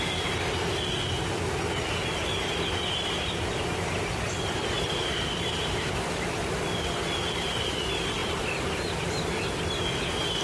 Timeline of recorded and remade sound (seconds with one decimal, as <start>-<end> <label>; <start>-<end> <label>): 0.0-2.5 recorded; 2.5-7.5 remade; 7.5-8.2 recorded; 8.2-9.4 remade; 9.4-10.4 recorded

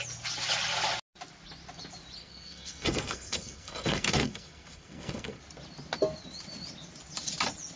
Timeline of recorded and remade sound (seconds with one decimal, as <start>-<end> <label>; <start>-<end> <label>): 0.0-2.2 recorded; 2.2-5.4 remade; 5.4-7.8 recorded

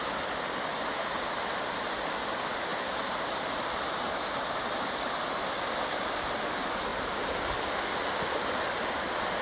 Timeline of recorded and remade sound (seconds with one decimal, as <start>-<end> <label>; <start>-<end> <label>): 0.0-9.4 recorded

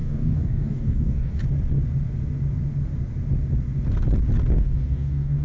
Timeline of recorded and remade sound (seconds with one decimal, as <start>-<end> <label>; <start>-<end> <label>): 0.0-1.3 remade; 1.3-4.5 recorded; 4.5-5.4 remade

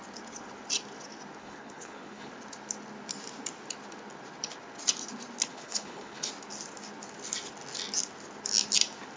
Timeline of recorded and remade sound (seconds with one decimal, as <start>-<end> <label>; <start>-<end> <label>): 0.0-1.4 recorded; 1.4-2.3 remade; 2.3-5.5 recorded; 5.5-6.3 remade; 6.3-9.2 recorded

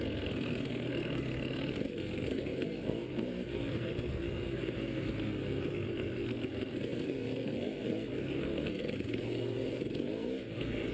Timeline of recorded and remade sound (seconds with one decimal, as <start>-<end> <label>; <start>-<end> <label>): 0.0-10.9 remade

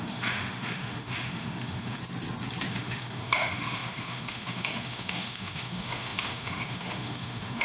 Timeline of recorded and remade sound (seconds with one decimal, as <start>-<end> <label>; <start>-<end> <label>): 0.0-2.0 remade; 2.0-2.7 recorded; 2.7-7.6 remade

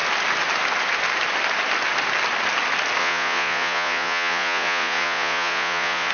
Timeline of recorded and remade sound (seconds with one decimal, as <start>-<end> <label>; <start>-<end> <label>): 0.0-3.0 recorded; 3.0-6.1 remade